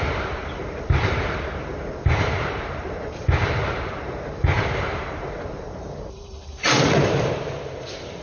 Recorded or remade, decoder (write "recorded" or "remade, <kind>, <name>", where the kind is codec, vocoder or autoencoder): remade, vocoder, BigVGAN v2